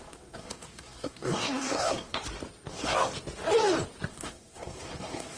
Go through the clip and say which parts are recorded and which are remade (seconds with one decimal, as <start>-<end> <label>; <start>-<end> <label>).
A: 0.0-2.2 remade; 2.2-2.7 recorded; 2.7-3.1 remade; 3.1-4.1 recorded; 4.1-5.4 remade